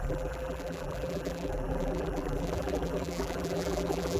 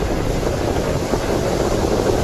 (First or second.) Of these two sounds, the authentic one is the second